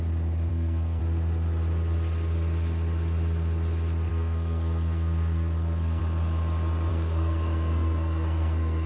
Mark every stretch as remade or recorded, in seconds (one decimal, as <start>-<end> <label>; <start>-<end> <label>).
0.0-0.5 recorded; 0.5-1.0 remade; 1.0-4.1 recorded; 4.1-6.0 remade; 6.0-6.9 recorded; 6.9-8.9 remade